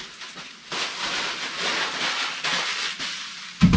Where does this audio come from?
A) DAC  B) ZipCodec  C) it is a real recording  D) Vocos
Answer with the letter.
C